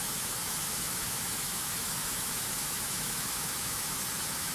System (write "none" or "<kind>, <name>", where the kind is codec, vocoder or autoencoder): autoencoder, DAC-VAE